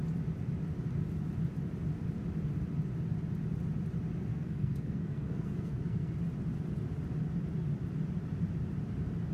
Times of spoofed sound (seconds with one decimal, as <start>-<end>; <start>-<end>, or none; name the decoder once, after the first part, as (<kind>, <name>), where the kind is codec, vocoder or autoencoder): 4.3-6.1 (codec, SNAC)